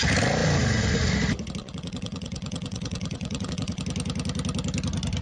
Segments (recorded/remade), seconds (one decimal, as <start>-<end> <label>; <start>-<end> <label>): 0.0-1.6 recorded; 1.6-3.8 remade; 3.8-5.2 recorded